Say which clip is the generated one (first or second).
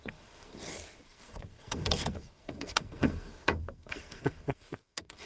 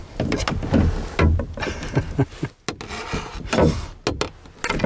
first